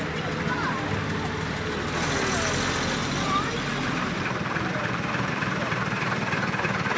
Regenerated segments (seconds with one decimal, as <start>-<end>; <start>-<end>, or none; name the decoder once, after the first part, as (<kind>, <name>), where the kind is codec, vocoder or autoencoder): 3.0-5.3 (vocoder, BigVGAN v2)